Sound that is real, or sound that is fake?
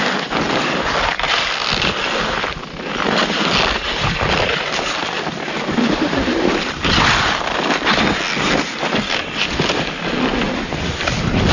real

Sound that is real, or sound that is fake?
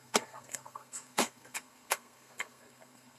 fake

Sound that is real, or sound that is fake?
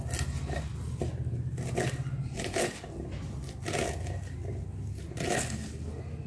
real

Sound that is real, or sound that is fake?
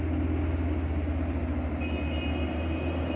real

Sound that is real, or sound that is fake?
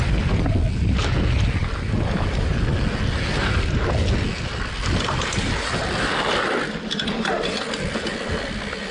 real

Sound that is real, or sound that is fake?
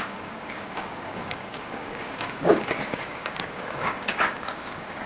fake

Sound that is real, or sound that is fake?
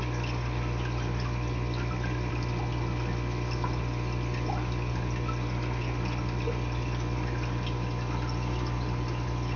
real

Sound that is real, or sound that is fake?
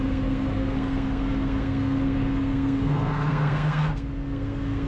fake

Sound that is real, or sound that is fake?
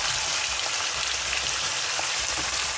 real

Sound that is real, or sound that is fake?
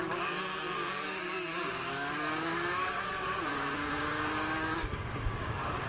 fake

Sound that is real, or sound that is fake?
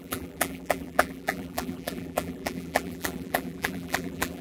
fake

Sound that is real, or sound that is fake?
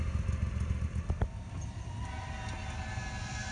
real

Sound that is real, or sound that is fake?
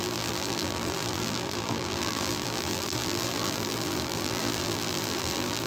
fake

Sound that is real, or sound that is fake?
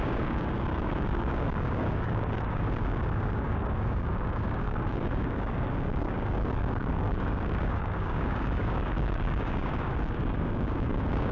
fake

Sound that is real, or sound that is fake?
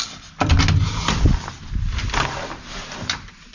real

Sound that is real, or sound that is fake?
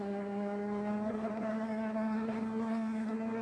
fake